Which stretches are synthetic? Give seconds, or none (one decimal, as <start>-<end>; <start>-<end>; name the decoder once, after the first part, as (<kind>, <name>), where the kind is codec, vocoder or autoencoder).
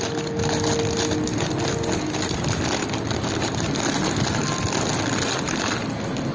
none